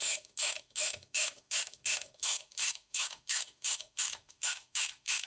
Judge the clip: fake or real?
fake